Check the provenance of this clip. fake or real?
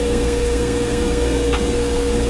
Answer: fake